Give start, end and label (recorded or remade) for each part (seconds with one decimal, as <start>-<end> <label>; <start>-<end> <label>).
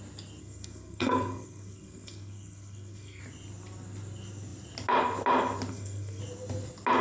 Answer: 0.0-0.4 recorded; 0.4-3.2 remade; 3.2-5.7 recorded; 5.7-6.2 remade; 6.2-7.0 recorded